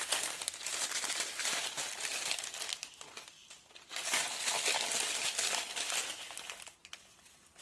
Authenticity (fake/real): real